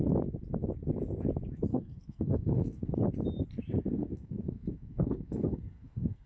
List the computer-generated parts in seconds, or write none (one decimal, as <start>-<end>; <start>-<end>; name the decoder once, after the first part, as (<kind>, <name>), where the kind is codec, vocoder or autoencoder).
1.7-2.8 (codec, SNAC); 3.9-6.3

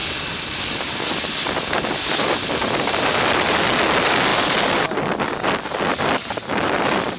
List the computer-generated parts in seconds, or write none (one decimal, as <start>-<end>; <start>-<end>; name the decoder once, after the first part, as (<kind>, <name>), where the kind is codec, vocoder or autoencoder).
none

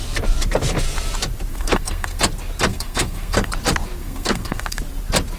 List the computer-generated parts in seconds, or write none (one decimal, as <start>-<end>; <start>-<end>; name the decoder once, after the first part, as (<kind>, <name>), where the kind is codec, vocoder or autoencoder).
1.5-2.2 (codec, SNAC); 2.7-3.5; 4.0-4.8

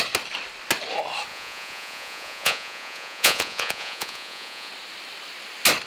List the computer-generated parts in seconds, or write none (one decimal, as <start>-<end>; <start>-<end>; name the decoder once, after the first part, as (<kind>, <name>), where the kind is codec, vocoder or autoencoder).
1.3-4.7 (vocoder, Vocos)

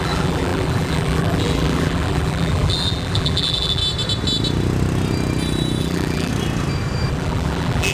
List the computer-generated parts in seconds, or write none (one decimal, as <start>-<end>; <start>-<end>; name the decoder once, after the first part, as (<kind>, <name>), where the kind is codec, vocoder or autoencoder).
0.0-3.8 (vocoder, BigVGAN v2); 5.8-6.3; 7.1-7.9

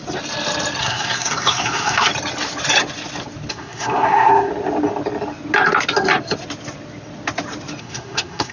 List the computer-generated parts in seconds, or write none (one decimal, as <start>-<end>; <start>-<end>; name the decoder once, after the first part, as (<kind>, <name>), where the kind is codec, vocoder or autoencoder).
0.8-2.1 (codec, SNAC); 3.5-4.5; 7.8-8.5

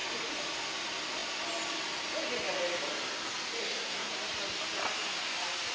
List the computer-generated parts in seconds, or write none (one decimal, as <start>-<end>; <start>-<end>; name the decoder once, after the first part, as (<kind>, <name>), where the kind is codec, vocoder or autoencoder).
3.6-4.1 (codec, SNAC)